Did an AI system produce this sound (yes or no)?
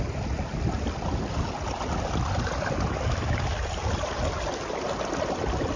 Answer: no